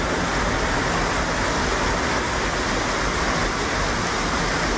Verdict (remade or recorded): recorded